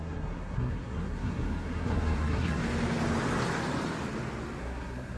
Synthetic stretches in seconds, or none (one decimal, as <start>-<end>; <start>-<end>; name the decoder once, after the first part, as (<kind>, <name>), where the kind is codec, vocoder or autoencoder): 0.0-2.6 (codec, SNAC); 4.6-5.2